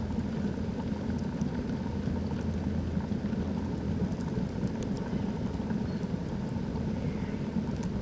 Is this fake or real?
real